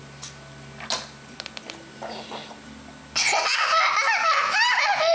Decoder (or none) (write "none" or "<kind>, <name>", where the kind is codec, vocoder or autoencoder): none